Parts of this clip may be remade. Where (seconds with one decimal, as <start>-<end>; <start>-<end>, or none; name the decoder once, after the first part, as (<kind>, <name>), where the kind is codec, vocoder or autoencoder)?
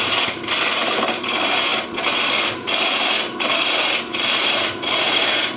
0.0-1.7 (vocoder, BigVGAN v2); 2.8-5.6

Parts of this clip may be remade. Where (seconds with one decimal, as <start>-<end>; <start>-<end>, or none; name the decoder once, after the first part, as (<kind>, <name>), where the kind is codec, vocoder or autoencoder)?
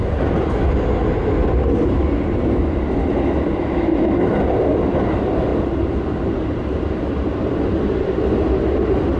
none